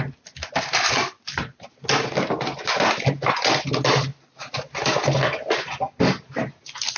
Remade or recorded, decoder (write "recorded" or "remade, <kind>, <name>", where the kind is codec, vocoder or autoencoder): recorded